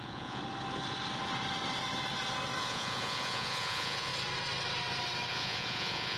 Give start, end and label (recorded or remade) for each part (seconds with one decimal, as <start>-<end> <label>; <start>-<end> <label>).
0.0-0.4 remade; 0.4-2.6 recorded; 2.6-4.1 remade; 4.1-5.3 recorded; 5.3-6.2 remade

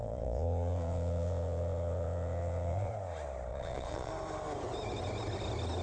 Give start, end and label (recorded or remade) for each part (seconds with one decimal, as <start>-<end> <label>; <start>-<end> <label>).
0.0-2.9 remade; 2.9-3.5 recorded; 3.5-4.1 remade; 4.1-5.8 recorded

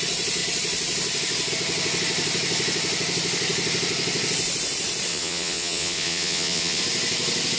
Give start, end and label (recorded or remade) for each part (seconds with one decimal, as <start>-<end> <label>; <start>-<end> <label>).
0.0-5.1 recorded; 5.1-6.8 remade; 6.8-7.6 recorded

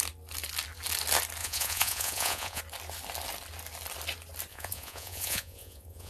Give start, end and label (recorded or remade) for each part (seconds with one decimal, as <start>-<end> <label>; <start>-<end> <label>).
0.0-1.4 recorded; 1.4-2.6 remade; 2.6-4.5 recorded; 4.5-6.1 remade

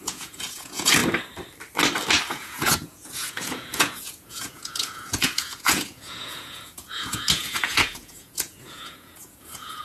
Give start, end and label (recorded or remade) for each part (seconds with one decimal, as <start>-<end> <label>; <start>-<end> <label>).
0.0-1.0 remade; 1.0-2.3 recorded; 2.3-9.8 remade